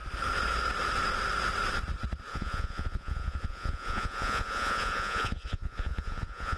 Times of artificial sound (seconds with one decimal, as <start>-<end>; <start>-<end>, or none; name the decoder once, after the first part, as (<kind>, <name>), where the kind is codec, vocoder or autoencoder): 2.3-6.6 (vocoder, Vocos)